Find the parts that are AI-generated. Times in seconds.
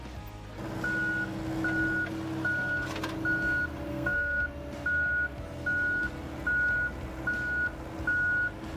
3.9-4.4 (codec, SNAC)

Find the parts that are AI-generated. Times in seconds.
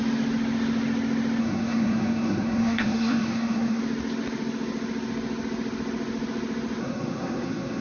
1.4-3.8 (codec, SNAC); 6.8-7.8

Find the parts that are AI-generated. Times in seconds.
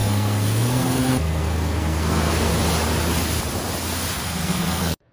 0.0-2.5 (codec, SNAC); 4.2-5.1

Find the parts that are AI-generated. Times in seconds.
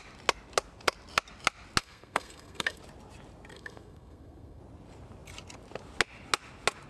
1.8-2.8 (codec, SNAC); 3.5-4.6